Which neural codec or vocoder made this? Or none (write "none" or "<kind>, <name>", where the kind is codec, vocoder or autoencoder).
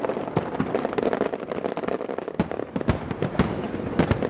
none